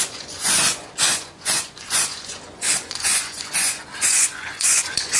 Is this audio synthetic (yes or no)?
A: yes